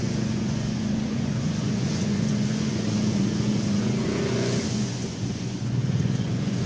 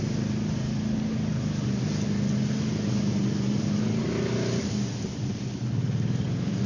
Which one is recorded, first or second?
second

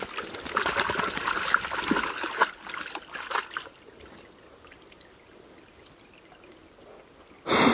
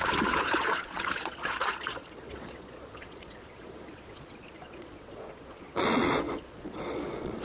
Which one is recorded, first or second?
first